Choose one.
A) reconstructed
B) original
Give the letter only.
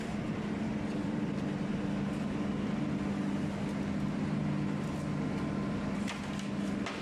B